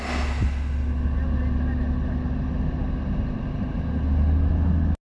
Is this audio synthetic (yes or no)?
no